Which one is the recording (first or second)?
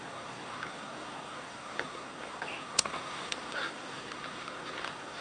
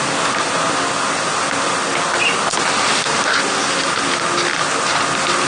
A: second